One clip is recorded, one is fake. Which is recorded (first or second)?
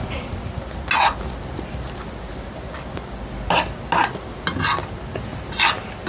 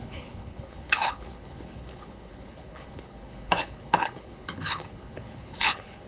first